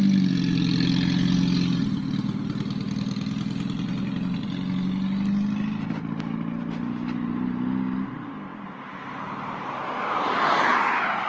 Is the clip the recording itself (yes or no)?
yes